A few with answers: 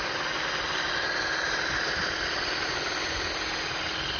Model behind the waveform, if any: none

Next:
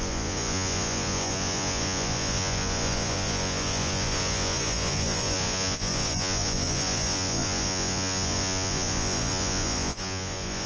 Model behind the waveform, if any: vocoder, Vocos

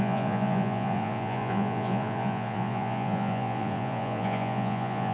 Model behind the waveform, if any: vocoder, Vocos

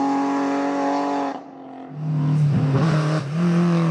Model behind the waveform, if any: none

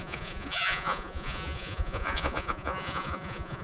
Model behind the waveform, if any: vocoder, Vocos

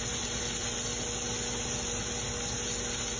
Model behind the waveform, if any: none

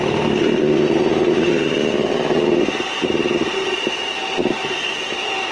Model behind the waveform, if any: none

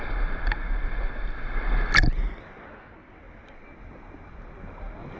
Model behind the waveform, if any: none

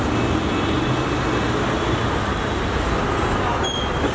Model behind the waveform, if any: none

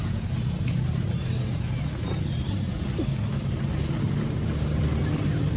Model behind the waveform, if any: none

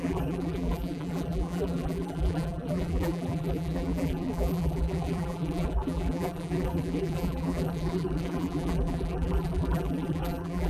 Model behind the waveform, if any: vocoder, BigVGAN v2